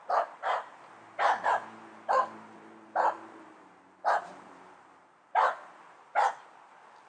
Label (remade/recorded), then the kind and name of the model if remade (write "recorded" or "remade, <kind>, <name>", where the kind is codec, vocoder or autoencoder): remade, vocoder, BigVGAN v2